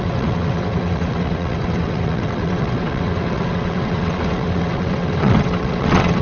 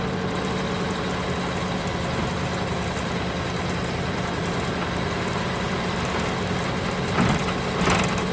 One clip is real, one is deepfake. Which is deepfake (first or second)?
first